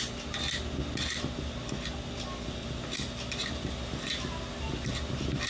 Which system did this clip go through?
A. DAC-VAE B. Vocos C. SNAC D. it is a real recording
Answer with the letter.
D